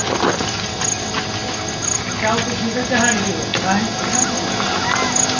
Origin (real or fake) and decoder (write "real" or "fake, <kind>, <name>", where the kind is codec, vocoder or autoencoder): real